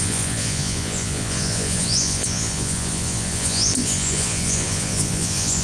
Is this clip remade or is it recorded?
remade